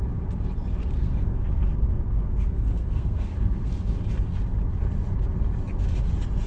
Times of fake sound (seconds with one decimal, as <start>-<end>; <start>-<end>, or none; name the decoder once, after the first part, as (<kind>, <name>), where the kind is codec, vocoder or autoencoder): 0.8-3.7 (codec, SNAC)